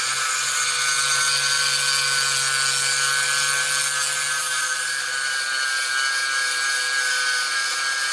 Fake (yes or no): no